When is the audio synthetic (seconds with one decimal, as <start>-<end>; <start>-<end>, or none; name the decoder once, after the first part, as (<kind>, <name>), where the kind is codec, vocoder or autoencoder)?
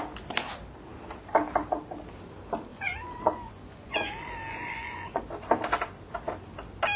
2.7-4.1 (vocoder, Vocos); 4.5-5.2